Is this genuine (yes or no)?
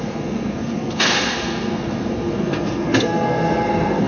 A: no